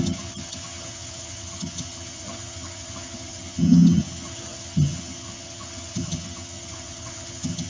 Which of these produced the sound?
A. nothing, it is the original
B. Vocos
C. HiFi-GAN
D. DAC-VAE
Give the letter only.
C